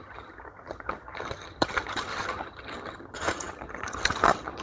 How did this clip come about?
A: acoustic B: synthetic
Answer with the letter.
B